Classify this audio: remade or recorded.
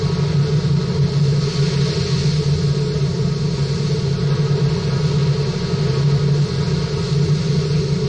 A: recorded